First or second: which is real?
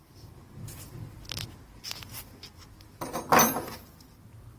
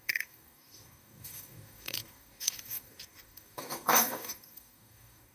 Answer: first